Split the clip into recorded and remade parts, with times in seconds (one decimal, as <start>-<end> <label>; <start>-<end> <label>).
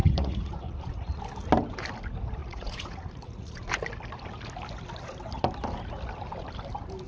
0.0-1.2 remade; 1.2-2.4 recorded; 2.4-3.7 remade; 3.7-7.1 recorded